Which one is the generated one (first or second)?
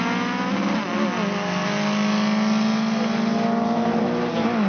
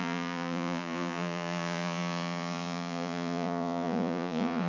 second